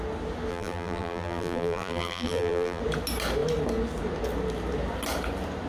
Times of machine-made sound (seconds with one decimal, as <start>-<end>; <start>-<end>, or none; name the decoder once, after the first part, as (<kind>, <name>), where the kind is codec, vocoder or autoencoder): 0.5-2.8 (vocoder, BigVGAN v2)